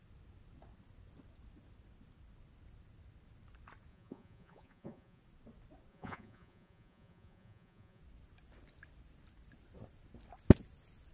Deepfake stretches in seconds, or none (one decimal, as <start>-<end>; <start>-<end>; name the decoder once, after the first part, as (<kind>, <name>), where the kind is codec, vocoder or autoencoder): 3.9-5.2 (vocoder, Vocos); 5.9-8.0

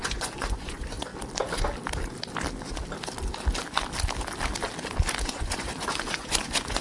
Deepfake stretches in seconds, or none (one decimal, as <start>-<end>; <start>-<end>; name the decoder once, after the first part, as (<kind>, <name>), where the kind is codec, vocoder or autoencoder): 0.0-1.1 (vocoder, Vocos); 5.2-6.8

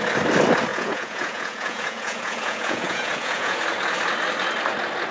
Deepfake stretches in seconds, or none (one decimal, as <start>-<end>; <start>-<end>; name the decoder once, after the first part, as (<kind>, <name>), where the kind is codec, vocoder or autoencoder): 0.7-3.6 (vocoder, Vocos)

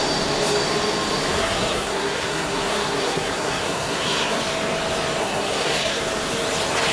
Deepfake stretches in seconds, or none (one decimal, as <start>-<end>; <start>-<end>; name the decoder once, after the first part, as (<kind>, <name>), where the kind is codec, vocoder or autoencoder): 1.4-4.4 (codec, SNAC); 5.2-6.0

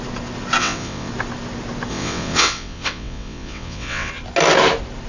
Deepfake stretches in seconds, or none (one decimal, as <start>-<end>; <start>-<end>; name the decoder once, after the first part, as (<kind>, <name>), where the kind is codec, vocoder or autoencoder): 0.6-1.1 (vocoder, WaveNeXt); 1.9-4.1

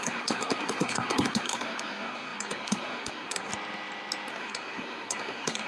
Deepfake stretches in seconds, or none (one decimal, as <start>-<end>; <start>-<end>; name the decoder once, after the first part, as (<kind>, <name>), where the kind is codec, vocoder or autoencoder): 0.0-3.5 (codec, SNAC); 4.3-5.7